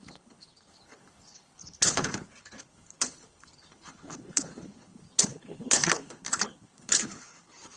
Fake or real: fake